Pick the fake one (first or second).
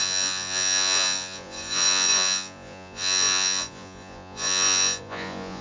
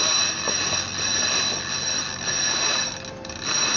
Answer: first